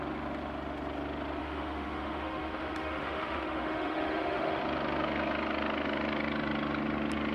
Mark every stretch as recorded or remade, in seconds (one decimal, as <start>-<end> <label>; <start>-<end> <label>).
0.0-1.4 recorded; 1.4-4.6 remade; 4.6-7.3 recorded